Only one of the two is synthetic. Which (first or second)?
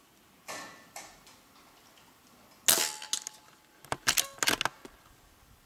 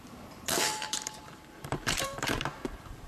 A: second